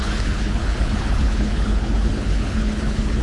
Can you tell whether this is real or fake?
fake